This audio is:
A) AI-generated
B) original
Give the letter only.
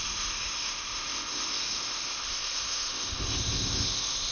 A